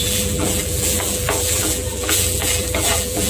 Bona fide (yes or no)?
no